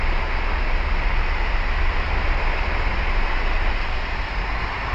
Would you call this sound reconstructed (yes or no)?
no